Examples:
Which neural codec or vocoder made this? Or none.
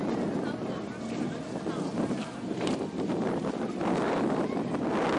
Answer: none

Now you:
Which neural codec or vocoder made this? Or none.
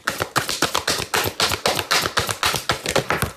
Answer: none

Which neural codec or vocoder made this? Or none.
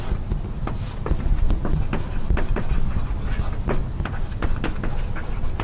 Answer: none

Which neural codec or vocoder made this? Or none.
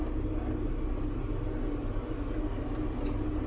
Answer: none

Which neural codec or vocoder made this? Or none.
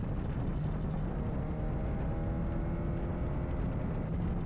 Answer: none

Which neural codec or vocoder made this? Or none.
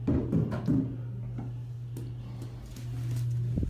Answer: none